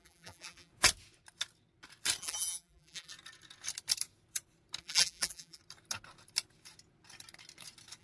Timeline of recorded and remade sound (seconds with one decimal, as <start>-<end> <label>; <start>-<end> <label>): 0.0-0.7 remade; 0.7-2.2 recorded; 2.2-3.1 remade; 3.1-4.8 recorded; 4.8-5.6 remade; 5.6-8.0 recorded